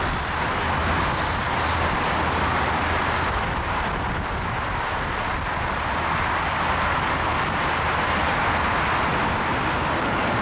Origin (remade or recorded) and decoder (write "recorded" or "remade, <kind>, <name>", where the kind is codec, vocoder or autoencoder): recorded